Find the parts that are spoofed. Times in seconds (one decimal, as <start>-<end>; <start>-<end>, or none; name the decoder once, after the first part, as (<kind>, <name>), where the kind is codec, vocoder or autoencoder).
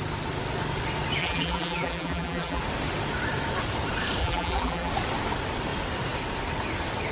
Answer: 1.2-2.6 (vocoder, BigVGAN v2); 4.2-4.9